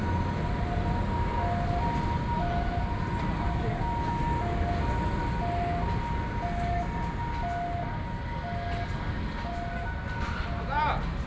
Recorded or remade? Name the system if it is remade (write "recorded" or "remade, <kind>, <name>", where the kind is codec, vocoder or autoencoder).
recorded